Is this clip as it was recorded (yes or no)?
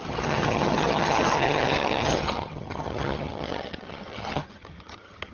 no